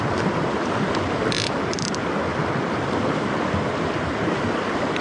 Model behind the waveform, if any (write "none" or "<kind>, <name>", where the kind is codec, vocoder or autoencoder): none